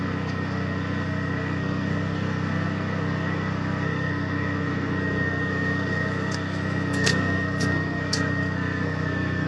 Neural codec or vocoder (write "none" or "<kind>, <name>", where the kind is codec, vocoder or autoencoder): codec, SNAC